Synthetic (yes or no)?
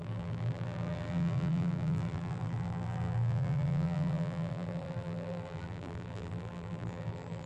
yes